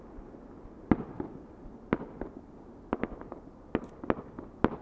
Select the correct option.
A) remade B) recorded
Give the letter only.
B